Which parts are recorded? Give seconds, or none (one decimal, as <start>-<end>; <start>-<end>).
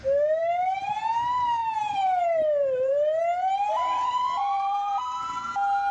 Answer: 0.0-1.6; 5.0-5.9